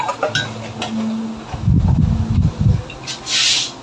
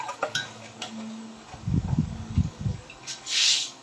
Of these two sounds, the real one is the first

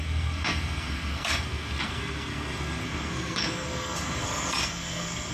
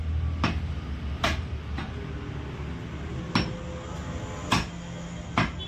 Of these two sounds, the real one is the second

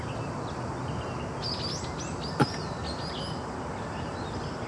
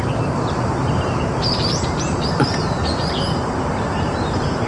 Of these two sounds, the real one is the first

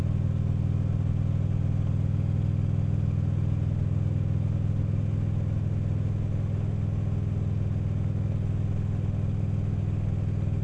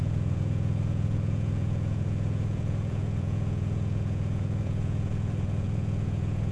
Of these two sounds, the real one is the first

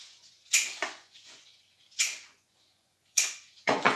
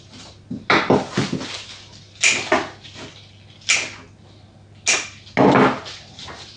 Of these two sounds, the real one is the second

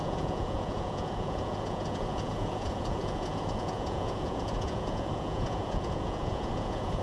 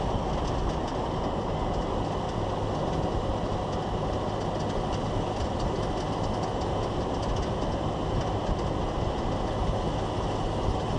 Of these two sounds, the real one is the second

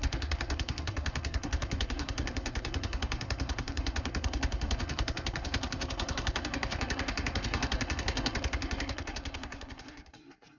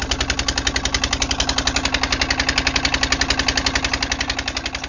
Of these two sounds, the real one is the second